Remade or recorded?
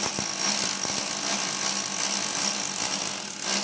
recorded